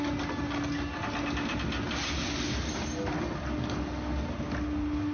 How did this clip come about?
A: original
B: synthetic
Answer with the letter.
A